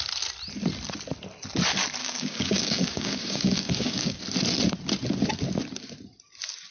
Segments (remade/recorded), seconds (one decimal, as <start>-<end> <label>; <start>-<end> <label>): 0.0-2.0 recorded; 2.0-4.2 remade; 4.2-6.7 recorded